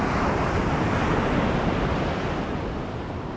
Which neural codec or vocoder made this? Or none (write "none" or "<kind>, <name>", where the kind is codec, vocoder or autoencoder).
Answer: none